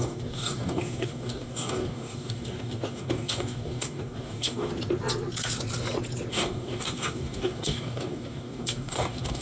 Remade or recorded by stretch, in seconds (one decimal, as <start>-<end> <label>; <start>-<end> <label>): 0.0-4.7 remade; 4.7-6.3 recorded; 6.3-9.4 remade